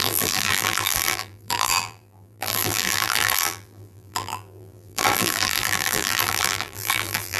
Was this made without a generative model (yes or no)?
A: no